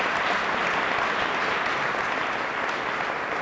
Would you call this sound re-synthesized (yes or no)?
yes